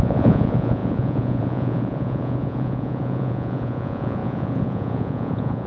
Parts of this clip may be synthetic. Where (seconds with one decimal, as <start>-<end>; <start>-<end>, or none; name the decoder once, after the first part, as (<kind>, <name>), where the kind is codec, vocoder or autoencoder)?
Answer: 0.0-5.7 (vocoder, Vocos)